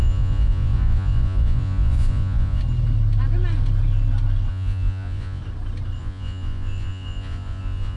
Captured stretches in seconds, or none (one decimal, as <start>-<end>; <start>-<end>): 2.6-4.5; 5.4-6.0